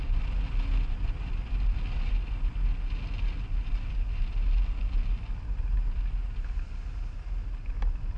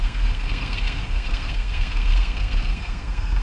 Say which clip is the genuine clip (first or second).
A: first